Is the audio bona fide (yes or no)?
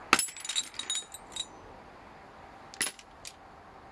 yes